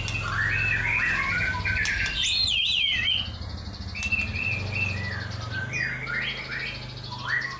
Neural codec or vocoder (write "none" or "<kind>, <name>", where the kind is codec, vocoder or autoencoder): none